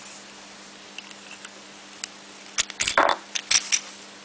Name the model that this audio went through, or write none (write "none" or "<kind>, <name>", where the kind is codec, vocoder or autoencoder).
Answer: none